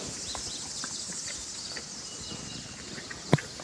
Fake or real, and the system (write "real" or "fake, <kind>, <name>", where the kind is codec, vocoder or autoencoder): real